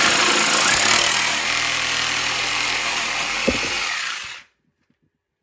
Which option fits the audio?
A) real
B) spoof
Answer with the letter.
B